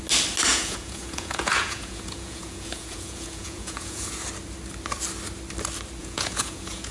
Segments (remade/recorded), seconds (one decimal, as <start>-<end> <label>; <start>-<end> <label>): 0.0-0.5 recorded; 0.5-4.1 remade; 4.1-6.0 recorded; 6.0-6.9 remade